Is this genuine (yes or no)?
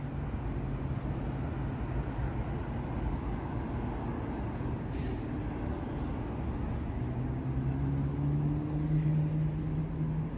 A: yes